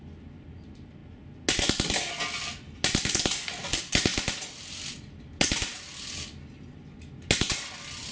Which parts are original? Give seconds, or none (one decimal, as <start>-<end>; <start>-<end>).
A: 0.0-8.1